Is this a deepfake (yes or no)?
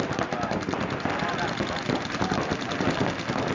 no